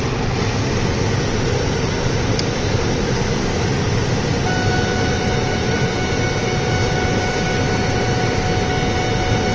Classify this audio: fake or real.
real